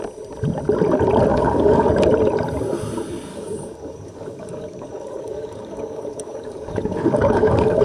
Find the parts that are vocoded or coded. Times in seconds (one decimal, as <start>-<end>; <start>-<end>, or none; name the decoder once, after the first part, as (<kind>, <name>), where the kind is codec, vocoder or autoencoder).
1.3-1.9 (codec, DAC); 3.3-7.8